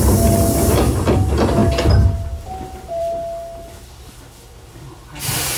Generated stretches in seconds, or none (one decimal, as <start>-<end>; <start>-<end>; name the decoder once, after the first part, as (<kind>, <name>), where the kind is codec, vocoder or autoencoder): none